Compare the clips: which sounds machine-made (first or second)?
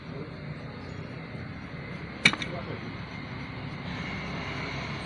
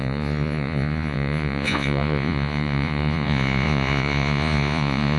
second